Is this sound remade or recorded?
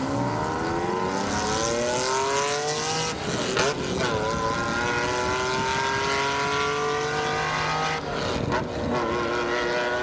recorded